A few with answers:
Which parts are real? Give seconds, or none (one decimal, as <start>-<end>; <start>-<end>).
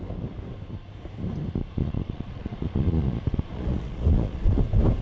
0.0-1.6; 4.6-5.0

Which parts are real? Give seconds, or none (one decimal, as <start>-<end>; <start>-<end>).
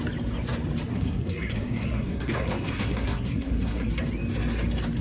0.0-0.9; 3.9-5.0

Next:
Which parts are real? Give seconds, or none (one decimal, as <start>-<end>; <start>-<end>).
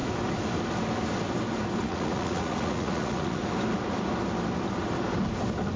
0.0-1.8; 3.4-5.8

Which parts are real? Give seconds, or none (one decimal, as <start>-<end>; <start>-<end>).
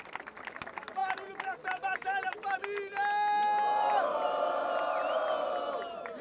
0.0-6.2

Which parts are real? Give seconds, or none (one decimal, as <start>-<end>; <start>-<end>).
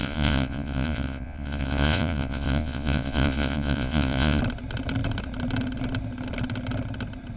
4.4-7.4